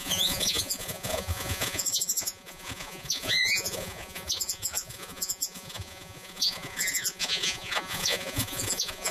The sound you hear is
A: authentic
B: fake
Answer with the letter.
B